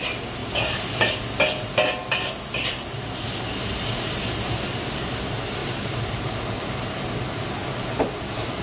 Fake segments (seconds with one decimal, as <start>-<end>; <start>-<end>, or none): none